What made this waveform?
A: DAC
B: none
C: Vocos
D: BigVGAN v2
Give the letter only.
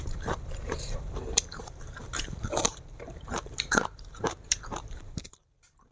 D